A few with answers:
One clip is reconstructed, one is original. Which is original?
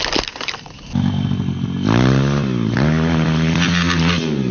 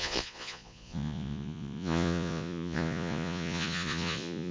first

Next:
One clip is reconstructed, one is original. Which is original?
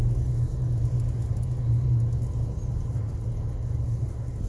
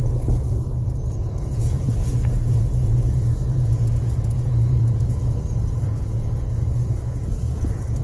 first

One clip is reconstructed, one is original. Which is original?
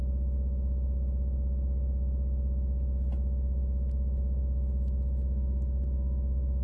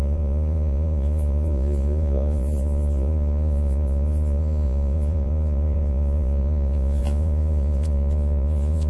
first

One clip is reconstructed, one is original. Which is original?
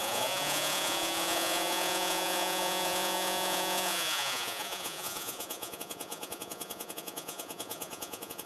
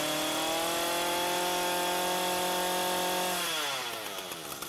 second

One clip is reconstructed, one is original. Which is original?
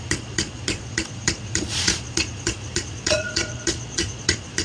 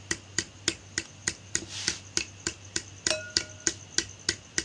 second